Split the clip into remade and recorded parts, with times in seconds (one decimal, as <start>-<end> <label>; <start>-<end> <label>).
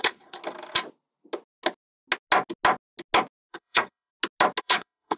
0.0-0.4 remade; 0.4-3.5 recorded; 3.5-4.1 remade; 4.1-4.6 recorded; 4.6-5.2 remade